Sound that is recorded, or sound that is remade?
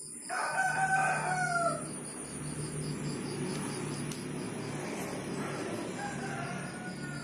recorded